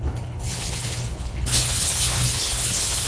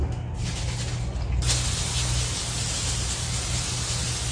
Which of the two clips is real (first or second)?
second